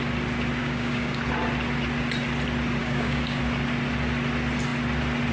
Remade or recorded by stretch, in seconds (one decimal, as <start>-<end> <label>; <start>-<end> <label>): 0.0-0.6 recorded; 0.6-1.2 remade; 1.2-2.8 recorded; 2.8-3.4 remade; 3.4-5.3 recorded